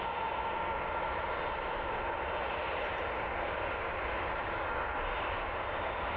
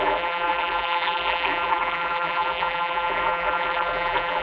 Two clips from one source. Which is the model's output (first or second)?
second